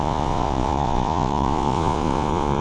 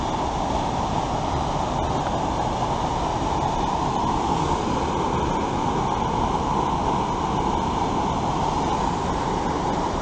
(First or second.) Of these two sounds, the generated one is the first